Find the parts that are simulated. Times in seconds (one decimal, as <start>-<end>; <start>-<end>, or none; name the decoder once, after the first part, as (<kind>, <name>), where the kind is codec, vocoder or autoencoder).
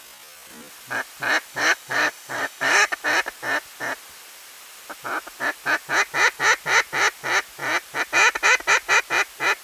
1.5-3.0 (codec, DAC)